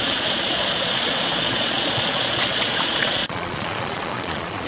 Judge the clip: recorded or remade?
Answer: remade